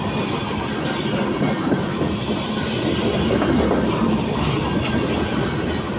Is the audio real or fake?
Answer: real